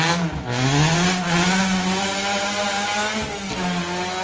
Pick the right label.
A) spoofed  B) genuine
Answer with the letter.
B